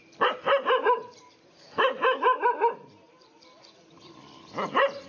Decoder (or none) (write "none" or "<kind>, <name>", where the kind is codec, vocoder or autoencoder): none